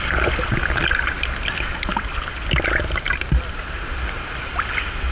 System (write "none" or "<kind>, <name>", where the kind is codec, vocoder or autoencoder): none